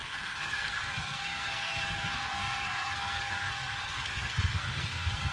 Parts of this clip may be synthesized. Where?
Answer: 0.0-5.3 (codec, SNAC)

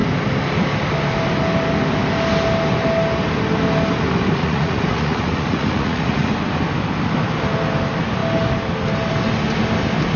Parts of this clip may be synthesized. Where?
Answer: 4.4-6.3 (vocoder, Vocos)

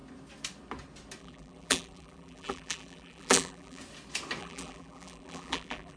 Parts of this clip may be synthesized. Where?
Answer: 1.2-3.8 (vocoder, BigVGAN v2); 4.4-6.0

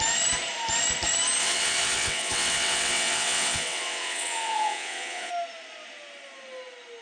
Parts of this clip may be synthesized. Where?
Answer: 1.4-5.3 (vocoder, WaveNeXt)

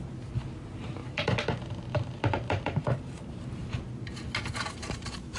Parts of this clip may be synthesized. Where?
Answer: 1.0-4.2 (vocoder, BigVGAN v2); 4.8-5.4